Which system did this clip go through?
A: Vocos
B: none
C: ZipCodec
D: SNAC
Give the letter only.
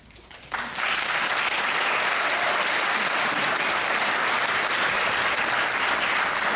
B